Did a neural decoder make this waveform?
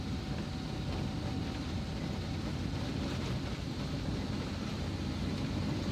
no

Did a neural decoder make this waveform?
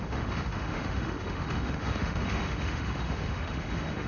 yes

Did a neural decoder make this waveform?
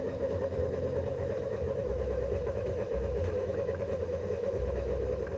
yes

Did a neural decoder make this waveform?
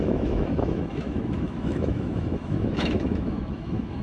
yes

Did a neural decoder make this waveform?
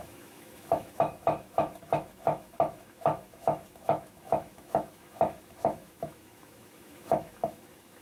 yes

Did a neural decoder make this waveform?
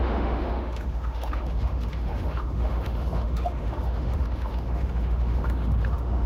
yes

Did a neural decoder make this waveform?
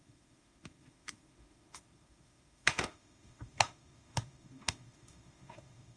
yes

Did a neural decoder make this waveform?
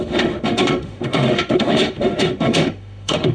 yes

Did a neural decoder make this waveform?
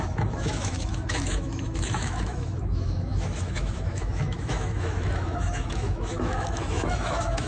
yes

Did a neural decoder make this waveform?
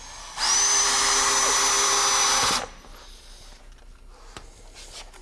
no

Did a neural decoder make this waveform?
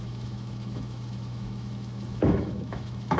yes